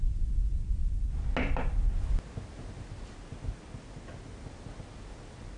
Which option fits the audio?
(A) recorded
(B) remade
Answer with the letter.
A